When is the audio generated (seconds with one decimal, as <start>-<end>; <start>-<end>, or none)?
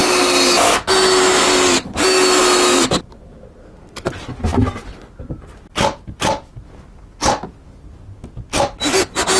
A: none